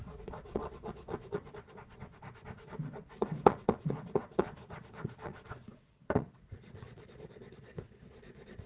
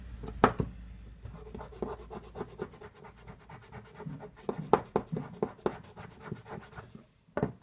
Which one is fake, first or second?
first